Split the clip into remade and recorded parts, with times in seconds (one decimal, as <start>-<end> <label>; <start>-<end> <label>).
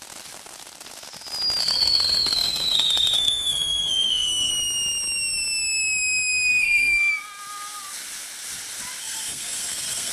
0.0-1.6 recorded; 1.6-4.5 remade; 4.5-6.5 recorded; 6.5-7.1 remade; 7.1-9.0 recorded; 9.0-10.1 remade